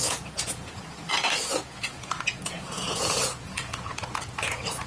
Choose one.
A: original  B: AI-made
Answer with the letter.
B